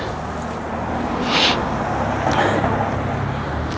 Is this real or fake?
real